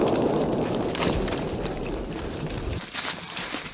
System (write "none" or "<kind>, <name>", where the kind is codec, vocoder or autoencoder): none